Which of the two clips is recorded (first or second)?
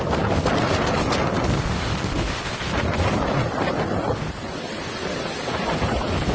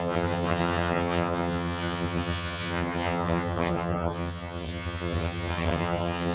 first